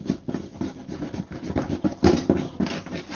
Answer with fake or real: real